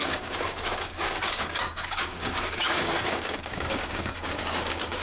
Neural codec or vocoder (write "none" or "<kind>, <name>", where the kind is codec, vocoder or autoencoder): codec, DAC